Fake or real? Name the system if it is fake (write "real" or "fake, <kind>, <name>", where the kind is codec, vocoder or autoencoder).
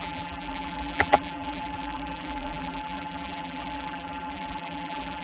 fake, vocoder, BigVGAN v2